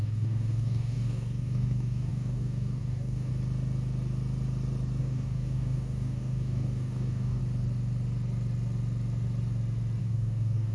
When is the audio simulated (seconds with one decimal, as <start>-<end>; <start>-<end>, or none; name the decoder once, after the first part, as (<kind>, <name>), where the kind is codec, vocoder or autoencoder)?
0.0-3.3 (codec, DAC); 5.0-7.4; 10.0-10.7